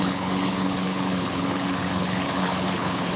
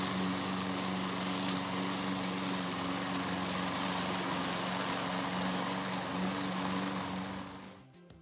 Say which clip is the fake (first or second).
first